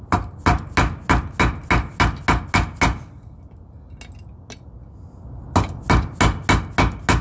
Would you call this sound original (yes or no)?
yes